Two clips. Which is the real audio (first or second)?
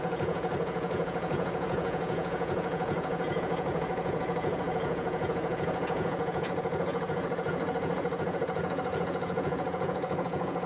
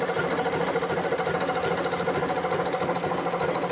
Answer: second